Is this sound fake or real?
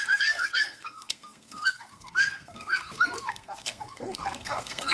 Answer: fake